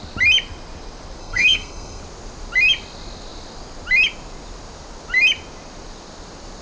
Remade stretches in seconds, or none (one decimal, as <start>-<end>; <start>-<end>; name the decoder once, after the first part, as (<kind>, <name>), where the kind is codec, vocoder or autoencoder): 1.2-2.0 (codec, SNAC)